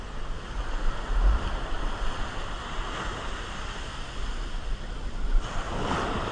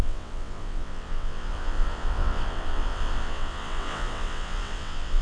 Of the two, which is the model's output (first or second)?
second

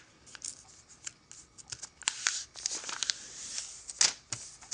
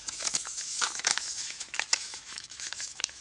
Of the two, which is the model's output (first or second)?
second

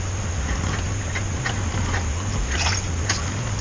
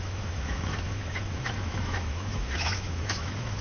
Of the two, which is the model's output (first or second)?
second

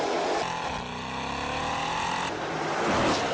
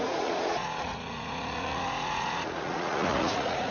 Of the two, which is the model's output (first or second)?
second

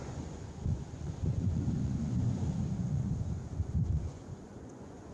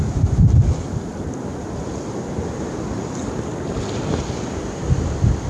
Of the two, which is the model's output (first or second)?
first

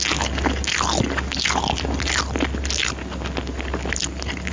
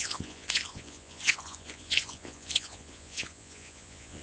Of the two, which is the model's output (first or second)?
second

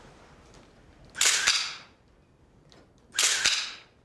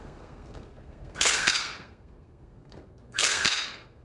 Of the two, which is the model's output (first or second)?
second